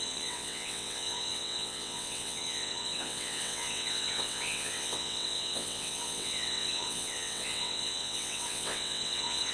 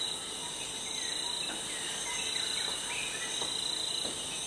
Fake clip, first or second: first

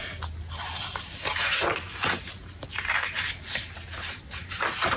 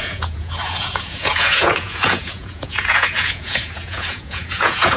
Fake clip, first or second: second